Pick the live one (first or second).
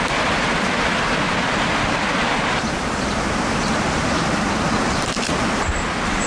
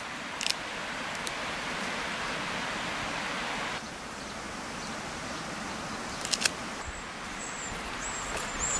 second